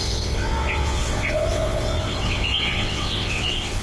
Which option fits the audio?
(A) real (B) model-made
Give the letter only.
B